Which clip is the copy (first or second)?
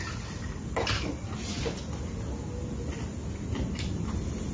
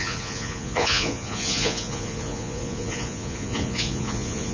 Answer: second